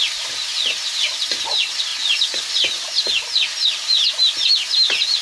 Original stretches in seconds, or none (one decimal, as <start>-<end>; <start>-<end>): 0.0-5.2